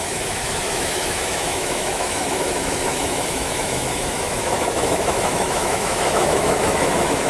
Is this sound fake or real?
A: fake